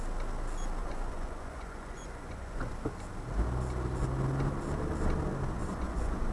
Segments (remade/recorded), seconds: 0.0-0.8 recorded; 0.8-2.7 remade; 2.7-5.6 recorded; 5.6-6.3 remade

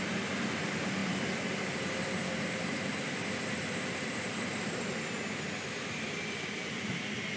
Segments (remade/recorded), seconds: 0.0-7.4 remade